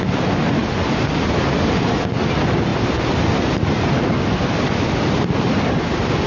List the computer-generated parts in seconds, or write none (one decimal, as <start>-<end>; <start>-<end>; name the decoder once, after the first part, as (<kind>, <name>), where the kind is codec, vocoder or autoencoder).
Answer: none